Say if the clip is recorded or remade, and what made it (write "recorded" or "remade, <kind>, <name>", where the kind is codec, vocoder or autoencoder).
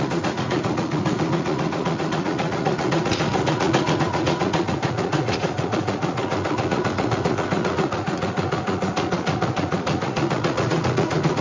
remade, vocoder, Vocos